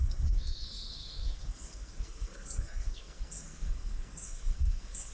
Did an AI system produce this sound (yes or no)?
yes